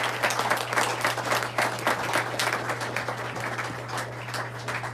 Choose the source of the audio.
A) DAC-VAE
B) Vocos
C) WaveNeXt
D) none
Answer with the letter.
D